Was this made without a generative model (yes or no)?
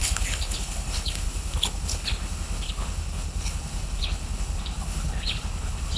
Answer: no